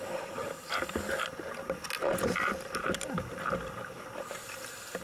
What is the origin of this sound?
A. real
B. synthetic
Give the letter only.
A